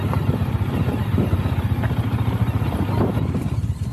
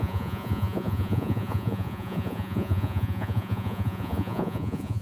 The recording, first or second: first